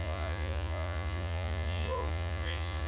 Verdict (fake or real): fake